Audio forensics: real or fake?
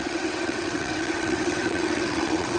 fake